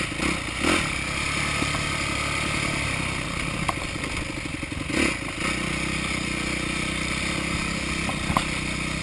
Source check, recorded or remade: recorded